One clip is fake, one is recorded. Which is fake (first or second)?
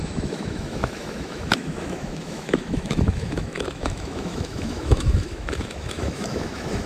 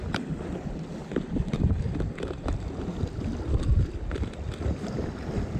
first